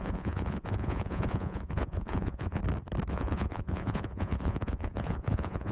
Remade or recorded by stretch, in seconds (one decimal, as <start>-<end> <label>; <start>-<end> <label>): 0.0-2.6 remade; 2.6-3.1 recorded; 3.1-5.7 remade